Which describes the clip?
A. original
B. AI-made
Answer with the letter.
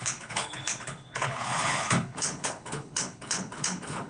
B